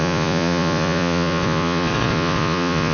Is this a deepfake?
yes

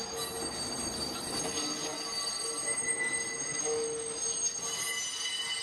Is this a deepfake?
no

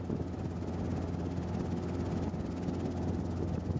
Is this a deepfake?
no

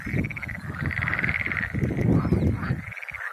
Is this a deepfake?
no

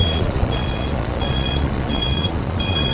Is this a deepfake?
yes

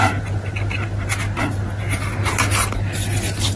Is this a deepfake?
no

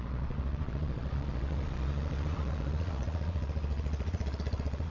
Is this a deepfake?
yes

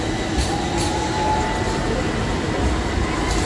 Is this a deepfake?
no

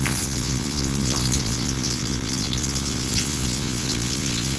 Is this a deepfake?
yes